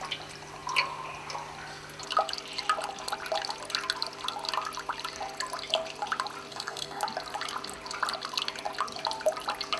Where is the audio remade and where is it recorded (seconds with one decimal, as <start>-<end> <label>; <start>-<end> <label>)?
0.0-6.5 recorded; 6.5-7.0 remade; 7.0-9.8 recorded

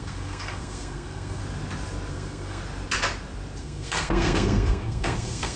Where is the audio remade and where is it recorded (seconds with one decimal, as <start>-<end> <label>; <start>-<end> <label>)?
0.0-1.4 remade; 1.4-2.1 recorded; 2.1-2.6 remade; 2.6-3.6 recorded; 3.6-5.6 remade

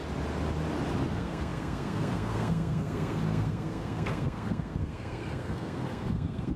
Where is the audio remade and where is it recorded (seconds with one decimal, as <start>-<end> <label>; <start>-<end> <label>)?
0.0-1.1 recorded; 1.1-6.6 remade